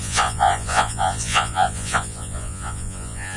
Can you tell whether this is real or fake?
fake